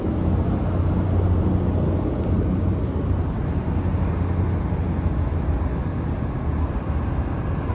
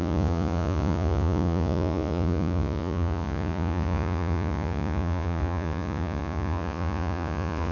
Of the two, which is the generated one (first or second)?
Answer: second